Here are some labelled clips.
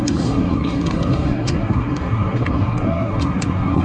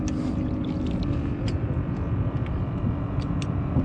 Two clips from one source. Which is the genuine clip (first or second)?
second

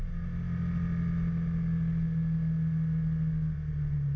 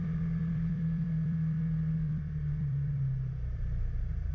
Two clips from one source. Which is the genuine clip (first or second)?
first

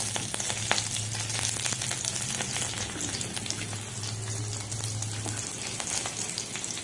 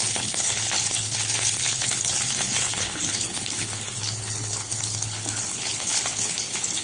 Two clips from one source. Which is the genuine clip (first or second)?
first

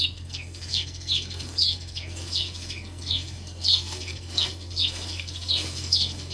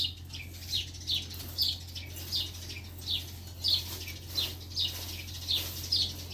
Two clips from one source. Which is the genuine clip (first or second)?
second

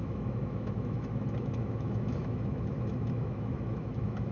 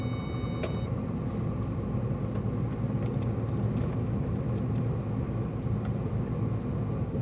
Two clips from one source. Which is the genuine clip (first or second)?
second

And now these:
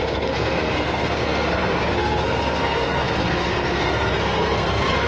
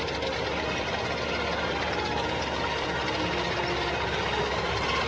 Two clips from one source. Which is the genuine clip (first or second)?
second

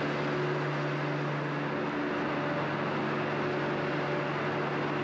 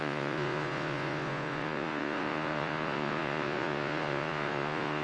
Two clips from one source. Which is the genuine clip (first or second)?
first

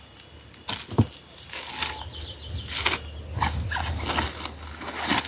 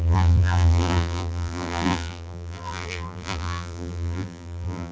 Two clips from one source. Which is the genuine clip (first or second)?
first